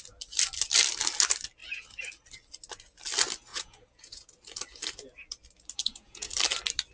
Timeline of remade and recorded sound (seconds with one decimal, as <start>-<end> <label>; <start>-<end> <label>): 0.0-3.5 recorded; 3.5-4.3 remade; 4.3-5.8 recorded; 5.8-6.3 remade; 6.3-6.9 recorded